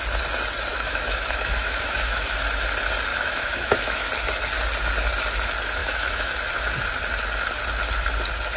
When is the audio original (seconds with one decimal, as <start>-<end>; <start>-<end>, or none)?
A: 0.0-0.7; 2.3-3.1; 4.1-5.8; 6.3-8.6